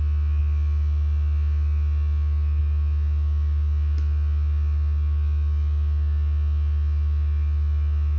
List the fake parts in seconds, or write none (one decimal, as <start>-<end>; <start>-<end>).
none